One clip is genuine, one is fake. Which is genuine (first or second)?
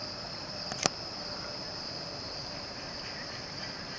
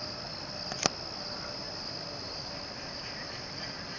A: second